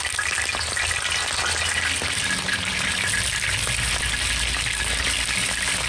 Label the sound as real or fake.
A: real